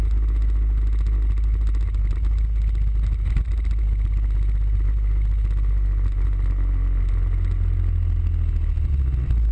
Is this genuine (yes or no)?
yes